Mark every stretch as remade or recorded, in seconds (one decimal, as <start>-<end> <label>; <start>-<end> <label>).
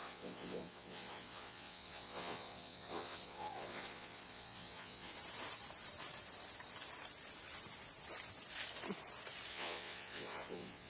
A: 0.0-5.1 remade; 5.1-9.5 recorded; 9.5-10.9 remade